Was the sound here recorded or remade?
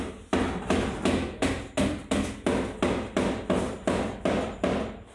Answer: recorded